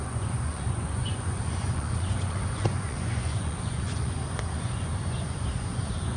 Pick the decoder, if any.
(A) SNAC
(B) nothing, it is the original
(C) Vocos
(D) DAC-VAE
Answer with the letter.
C